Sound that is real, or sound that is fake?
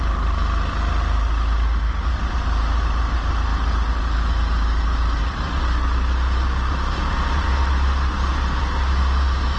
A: real